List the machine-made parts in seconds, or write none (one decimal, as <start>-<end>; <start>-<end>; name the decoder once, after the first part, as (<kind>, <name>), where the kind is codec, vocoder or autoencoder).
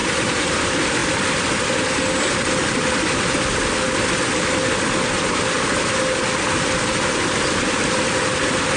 0.0-0.6 (vocoder, BigVGAN v2)